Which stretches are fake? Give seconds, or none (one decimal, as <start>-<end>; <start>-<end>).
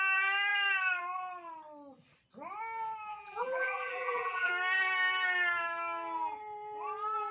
3.1-4.5